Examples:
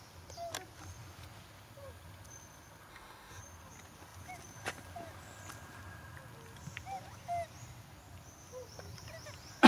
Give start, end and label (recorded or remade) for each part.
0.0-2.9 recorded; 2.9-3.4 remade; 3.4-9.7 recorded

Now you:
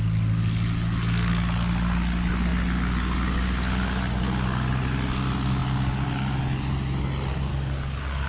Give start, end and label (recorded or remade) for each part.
0.0-7.5 recorded; 7.5-8.3 remade

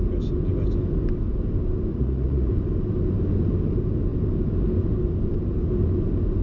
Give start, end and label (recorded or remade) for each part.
0.0-1.9 recorded; 1.9-2.5 remade; 2.5-6.4 recorded